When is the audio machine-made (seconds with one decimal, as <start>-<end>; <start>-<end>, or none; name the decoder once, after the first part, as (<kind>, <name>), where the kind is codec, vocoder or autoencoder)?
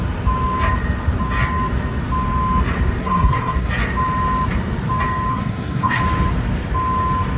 3.0-3.7 (codec, SNAC); 5.3-6.0